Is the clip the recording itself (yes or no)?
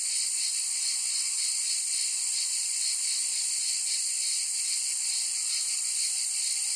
no